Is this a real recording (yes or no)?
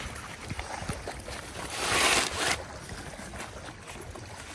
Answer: yes